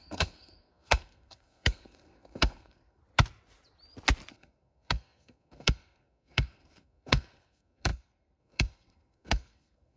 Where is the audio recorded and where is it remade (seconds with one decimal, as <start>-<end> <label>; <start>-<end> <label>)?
0.0-3.0 remade; 3.0-4.3 recorded; 4.3-10.0 remade